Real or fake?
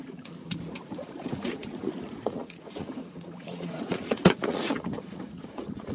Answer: fake